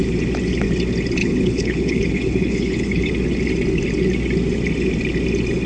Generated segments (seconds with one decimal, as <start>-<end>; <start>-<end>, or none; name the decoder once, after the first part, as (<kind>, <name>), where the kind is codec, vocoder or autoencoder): 1.2-3.1 (codec, HILCodec)